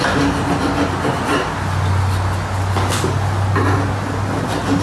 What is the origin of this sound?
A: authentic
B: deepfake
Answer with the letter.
A